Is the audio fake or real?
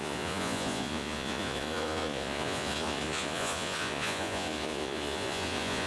fake